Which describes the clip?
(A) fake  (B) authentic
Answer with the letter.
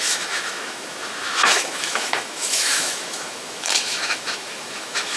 A